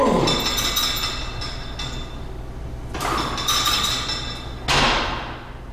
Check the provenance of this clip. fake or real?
real